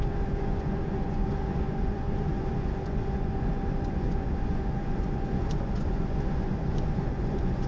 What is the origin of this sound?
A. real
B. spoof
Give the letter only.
B